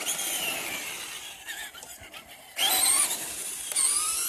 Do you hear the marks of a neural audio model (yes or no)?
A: no